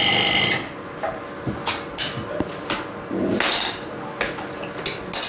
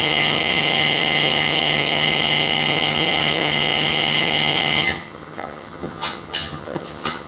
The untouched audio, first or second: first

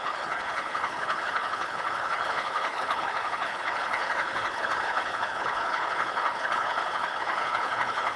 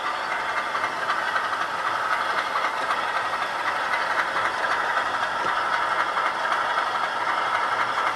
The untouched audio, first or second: second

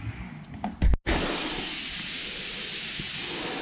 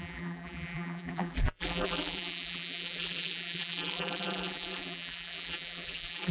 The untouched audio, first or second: first